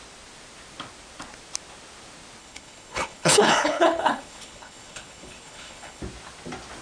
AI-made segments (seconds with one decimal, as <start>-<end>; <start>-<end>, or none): 2.4-6.0